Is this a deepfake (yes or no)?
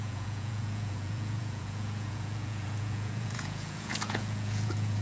yes